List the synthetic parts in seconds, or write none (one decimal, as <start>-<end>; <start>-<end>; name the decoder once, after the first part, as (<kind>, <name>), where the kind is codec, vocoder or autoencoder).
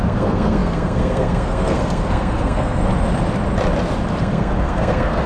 0.0-2.8 (codec, SNAC); 4.2-5.3